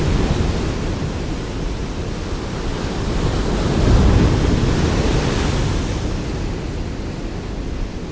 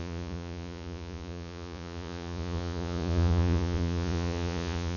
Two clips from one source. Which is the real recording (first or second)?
first